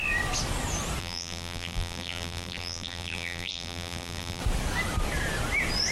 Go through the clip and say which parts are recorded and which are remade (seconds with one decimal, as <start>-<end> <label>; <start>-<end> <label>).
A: 0.0-1.0 recorded; 1.0-4.4 remade; 4.4-5.9 recorded